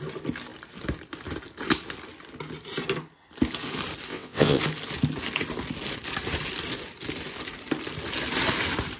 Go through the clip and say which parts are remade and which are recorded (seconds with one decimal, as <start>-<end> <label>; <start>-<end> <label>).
0.0-4.1 recorded; 4.1-4.6 remade; 4.6-9.0 recorded

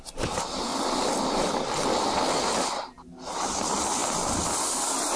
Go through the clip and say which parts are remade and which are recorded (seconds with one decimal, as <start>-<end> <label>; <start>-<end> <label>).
0.0-5.2 recorded

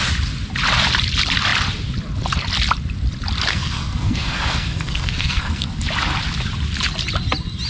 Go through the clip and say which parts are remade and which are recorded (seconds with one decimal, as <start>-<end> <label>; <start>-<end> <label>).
0.0-3.5 recorded; 3.5-5.7 remade; 5.7-7.7 recorded